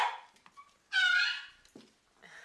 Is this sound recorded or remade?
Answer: recorded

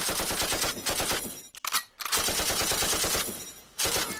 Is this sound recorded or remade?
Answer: recorded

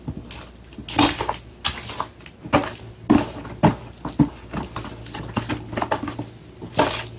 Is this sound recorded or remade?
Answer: recorded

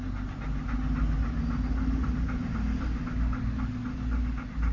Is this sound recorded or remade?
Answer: recorded